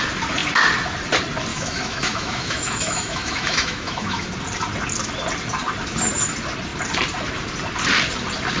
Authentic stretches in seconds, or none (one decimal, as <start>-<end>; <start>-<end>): 0.0-1.5; 4.3-8.6